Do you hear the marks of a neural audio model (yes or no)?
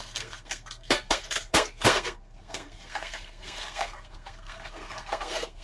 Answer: yes